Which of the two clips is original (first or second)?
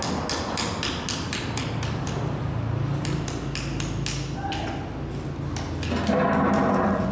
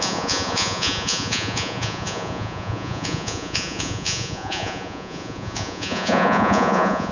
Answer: first